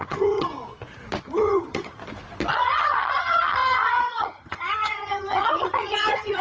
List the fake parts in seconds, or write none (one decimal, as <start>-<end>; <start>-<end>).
0.0-0.5; 1.2-2.0; 2.5-6.4